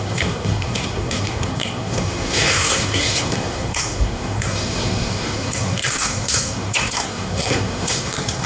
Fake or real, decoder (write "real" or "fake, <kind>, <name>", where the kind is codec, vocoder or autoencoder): fake, codec, SNAC